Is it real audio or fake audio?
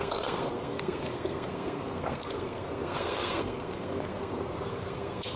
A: fake